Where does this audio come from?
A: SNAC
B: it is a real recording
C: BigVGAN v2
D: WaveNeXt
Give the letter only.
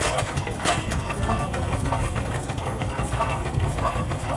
A